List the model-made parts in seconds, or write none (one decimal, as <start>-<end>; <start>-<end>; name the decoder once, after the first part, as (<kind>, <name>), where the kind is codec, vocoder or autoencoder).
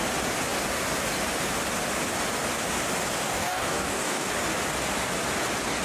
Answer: 3.2-4.3 (codec, DAC)